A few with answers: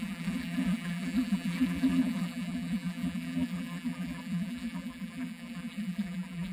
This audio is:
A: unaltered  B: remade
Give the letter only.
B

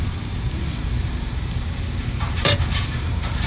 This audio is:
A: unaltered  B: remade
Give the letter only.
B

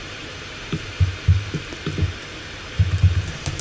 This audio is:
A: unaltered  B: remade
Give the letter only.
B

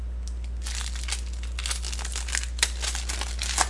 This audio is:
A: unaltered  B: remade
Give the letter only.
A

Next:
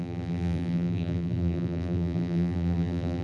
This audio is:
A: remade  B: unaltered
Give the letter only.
A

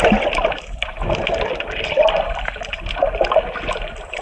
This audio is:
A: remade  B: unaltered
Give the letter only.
B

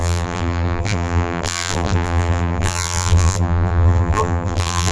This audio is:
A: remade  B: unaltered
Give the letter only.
A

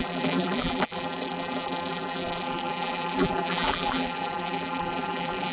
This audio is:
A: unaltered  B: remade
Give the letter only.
B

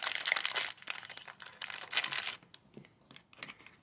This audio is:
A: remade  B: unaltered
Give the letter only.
B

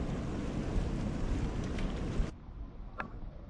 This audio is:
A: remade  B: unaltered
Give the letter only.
B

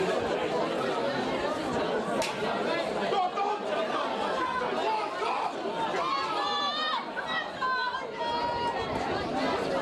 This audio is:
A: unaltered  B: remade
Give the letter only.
A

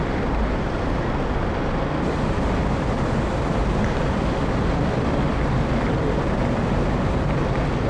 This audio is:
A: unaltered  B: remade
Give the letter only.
A